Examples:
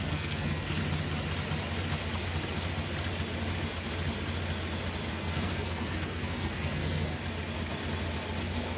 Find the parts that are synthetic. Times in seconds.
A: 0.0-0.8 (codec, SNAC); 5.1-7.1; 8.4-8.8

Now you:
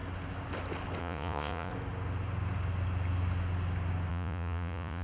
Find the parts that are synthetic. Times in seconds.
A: 1.0-1.7 (vocoder, Vocos); 4.1-5.0

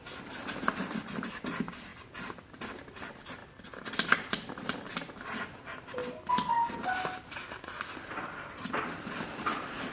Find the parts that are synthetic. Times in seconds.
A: none

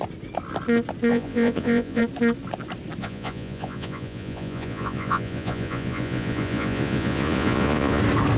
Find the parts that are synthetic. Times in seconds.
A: 1.1-2.0 (vocoder, Vocos); 3.0-8.0

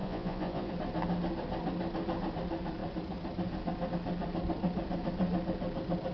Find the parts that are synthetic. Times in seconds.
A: 0.0-0.7 (vocoder, Vocos)

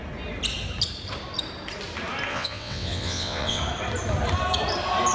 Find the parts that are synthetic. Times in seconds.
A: 2.3-3.6 (vocoder, WaveNeXt)

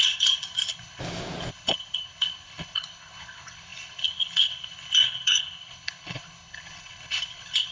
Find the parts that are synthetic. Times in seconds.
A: 0.0-1.0 (codec, HILCodec); 1.5-7.7